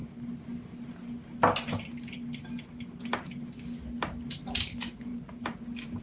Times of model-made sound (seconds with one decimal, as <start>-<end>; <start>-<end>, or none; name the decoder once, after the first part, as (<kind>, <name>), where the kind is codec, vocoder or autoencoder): none